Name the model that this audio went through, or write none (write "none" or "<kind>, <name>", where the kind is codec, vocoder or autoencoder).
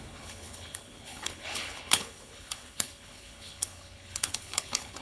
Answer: codec, HILCodec